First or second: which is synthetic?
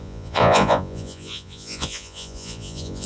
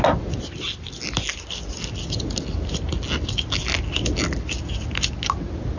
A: first